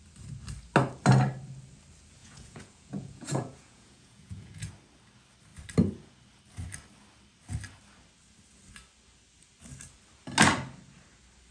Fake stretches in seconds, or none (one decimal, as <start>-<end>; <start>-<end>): 2.2-4.7